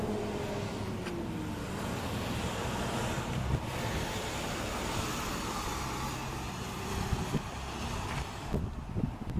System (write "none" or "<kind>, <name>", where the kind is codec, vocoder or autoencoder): none